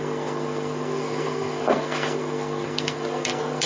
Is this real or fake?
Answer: fake